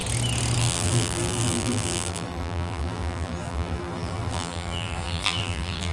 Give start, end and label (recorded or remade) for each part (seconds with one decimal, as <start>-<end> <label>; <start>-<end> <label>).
0.0-0.6 recorded; 0.6-5.9 remade